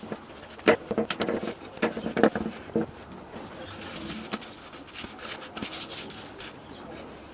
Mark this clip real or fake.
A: real